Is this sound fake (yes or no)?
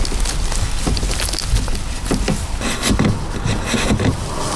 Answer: no